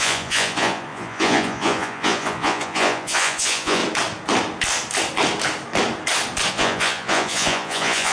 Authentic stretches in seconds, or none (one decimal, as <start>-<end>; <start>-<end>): 3.8-6.5